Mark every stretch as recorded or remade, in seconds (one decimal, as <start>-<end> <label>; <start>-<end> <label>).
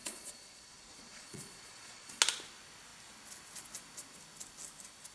0.0-2.2 remade; 2.2-5.1 recorded